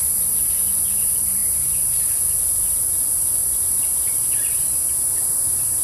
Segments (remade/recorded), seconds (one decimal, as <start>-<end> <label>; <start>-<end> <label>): 0.0-1.4 remade; 1.4-2.0 recorded; 2.0-5.8 remade